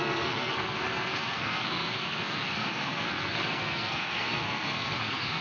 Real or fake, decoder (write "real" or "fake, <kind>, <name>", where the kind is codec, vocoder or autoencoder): fake, codec, SNAC